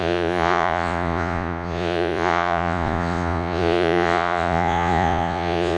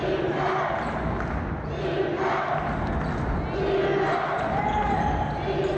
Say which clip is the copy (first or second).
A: first